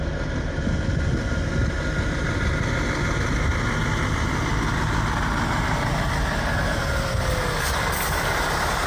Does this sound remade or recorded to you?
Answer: recorded